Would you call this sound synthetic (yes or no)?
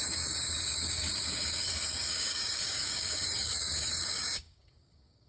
yes